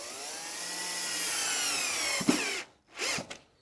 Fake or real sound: real